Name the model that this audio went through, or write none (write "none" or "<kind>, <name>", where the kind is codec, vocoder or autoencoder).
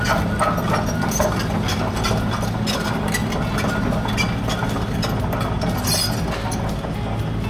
none